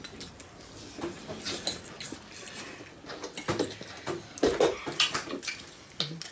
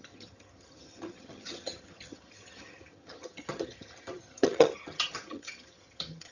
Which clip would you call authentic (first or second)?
first